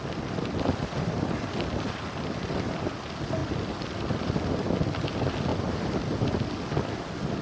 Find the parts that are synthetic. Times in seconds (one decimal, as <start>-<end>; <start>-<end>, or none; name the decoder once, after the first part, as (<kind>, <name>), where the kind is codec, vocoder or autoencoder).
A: none